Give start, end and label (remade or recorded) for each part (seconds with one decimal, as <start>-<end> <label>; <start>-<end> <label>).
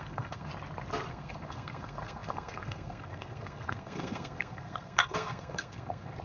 0.0-0.5 remade; 0.5-1.1 recorded; 1.1-6.2 remade